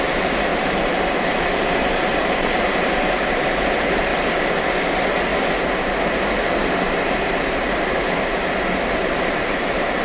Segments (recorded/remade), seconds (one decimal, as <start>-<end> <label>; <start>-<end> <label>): 0.0-4.1 remade; 4.1-4.6 recorded; 4.6-10.0 remade